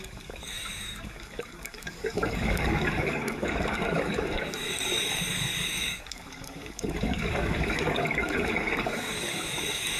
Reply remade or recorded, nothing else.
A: remade